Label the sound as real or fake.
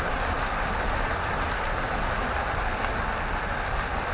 real